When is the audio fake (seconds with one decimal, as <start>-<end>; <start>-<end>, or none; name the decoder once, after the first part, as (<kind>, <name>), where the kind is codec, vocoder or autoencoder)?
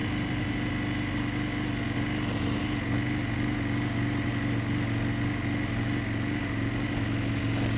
0.0-0.5 (vocoder, BigVGAN v2)